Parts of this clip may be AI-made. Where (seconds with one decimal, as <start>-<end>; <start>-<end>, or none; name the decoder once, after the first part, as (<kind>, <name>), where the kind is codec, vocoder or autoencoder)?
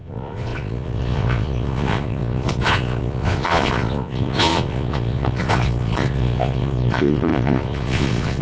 0.0-8.4 (vocoder, Vocos)